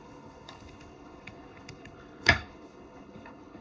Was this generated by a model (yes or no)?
yes